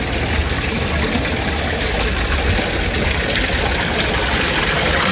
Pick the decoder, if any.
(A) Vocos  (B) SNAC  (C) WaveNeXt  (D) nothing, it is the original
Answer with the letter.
D